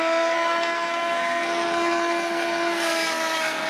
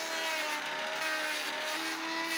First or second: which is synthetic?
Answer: first